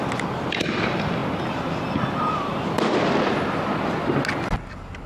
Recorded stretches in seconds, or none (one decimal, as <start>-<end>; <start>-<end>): 0.0-5.1